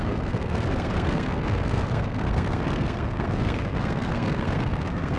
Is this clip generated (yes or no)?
yes